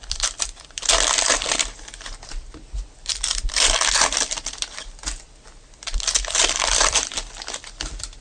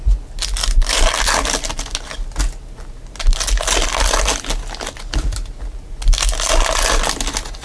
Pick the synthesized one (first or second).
first